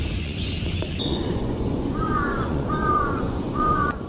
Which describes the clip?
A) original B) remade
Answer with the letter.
B